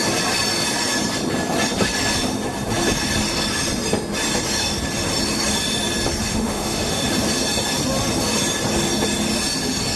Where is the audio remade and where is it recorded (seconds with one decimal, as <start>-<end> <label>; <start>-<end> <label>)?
0.0-6.3 recorded; 6.3-7.1 remade; 7.1-10.0 recorded